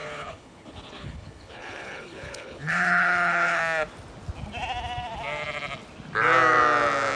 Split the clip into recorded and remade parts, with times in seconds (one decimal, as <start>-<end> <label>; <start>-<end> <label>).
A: 0.0-3.6 remade; 3.6-7.2 recorded